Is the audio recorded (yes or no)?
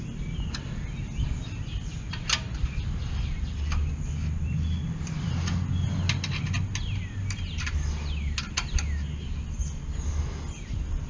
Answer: yes